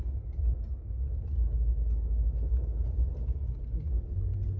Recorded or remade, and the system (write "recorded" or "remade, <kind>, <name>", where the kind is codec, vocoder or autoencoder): recorded